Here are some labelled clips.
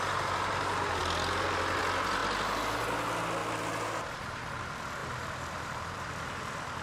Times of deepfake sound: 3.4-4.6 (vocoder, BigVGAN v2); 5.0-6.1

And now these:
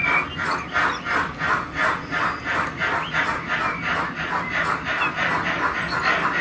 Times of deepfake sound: none

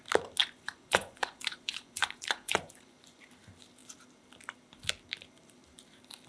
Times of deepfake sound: 0.4-3.2 (vocoder, Vocos)

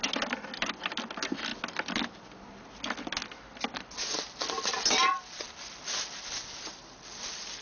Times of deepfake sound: none

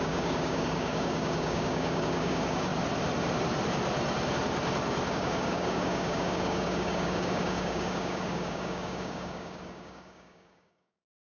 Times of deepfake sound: 0.0-2.7 (codec, DAC); 5.1-11.4